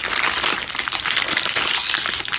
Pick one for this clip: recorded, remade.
recorded